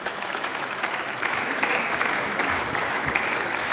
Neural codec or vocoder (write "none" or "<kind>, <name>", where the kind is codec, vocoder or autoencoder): autoencoder, DAC-VAE